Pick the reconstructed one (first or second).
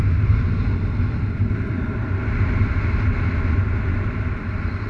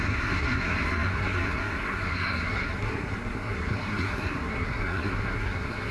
second